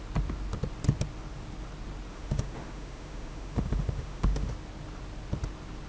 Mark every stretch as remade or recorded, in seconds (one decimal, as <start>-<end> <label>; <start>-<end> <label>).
0.0-2.1 recorded; 2.1-4.5 remade; 4.5-5.9 recorded